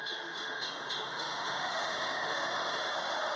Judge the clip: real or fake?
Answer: fake